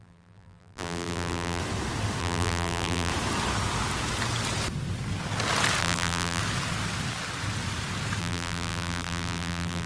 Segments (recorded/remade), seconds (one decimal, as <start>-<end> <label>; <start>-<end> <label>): 0.0-1.6 remade; 1.6-2.2 recorded; 2.2-3.1 remade; 3.1-5.8 recorded; 5.8-6.4 remade; 6.4-8.2 recorded; 8.2-9.9 remade